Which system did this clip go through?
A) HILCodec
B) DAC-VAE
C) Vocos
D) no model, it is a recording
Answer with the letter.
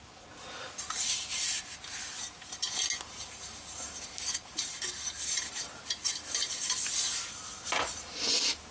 D